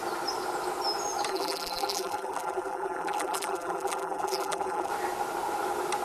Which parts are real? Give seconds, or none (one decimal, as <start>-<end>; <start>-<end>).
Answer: 0.0-1.3; 4.9-6.0